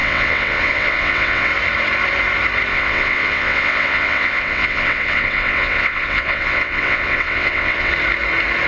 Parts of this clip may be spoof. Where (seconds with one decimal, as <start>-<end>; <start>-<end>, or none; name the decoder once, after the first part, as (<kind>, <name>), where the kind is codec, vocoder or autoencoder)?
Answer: 0.0-1.5 (vocoder, WaveNeXt); 2.7-7.9